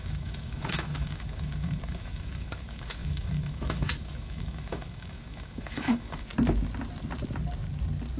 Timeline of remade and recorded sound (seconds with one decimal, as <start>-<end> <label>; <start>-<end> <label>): 0.0-6.3 remade; 6.3-8.2 recorded